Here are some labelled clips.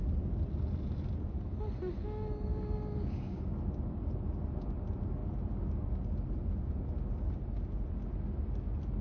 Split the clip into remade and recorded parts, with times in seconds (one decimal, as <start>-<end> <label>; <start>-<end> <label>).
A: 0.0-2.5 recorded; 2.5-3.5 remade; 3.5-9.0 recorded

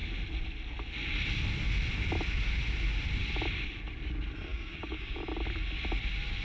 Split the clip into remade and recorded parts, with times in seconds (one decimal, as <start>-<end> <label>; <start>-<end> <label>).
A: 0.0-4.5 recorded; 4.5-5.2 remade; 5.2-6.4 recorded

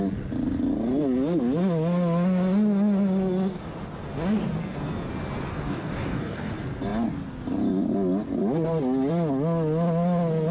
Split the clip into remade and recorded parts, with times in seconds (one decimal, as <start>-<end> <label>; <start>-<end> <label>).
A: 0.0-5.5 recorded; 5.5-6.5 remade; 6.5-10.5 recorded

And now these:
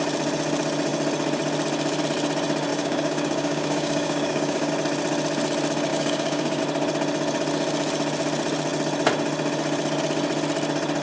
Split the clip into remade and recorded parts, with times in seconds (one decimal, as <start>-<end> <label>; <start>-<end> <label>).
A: 0.0-2.7 recorded; 2.7-4.7 remade; 4.7-5.9 recorded; 5.9-6.6 remade; 6.6-11.0 recorded

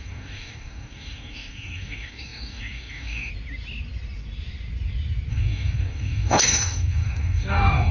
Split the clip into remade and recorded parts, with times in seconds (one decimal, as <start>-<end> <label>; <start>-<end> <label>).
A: 0.0-3.3 remade; 3.3-5.3 recorded; 5.3-7.9 remade

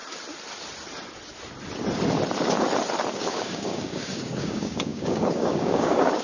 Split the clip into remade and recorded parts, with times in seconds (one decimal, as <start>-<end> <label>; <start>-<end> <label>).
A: 0.0-3.1 recorded; 3.1-6.2 remade

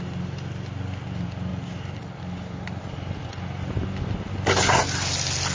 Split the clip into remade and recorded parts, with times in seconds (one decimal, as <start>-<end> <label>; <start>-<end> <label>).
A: 0.0-5.5 recorded